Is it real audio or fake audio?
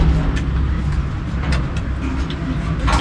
real